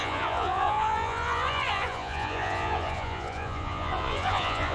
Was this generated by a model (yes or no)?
yes